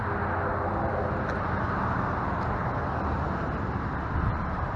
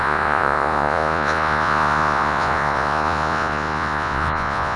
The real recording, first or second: first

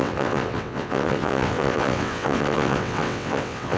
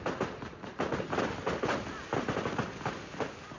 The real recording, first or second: second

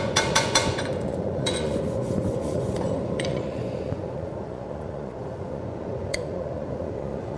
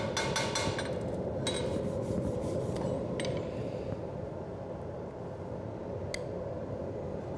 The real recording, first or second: second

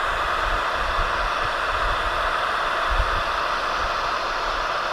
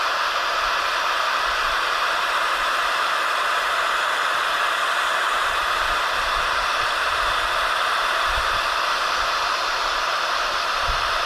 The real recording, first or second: first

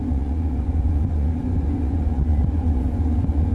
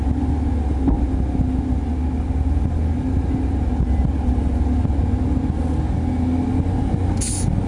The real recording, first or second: second